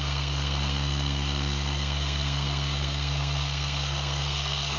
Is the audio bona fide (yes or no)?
no